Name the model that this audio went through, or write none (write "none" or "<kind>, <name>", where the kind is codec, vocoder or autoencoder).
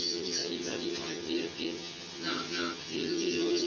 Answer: vocoder, HiFi-GAN